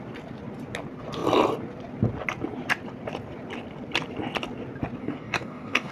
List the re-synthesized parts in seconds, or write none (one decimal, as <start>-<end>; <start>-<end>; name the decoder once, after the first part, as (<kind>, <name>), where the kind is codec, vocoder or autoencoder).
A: 5.0-5.9 (codec, DAC)